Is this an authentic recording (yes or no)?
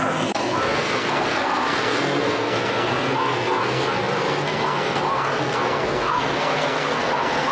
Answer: no